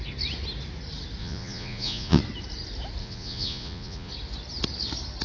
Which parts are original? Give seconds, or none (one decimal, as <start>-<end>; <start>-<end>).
0.0-1.2; 2.2-3.0; 4.1-5.2